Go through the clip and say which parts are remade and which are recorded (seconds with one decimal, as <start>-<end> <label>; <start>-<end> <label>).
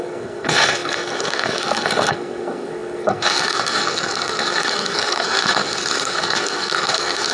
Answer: 0.0-7.3 remade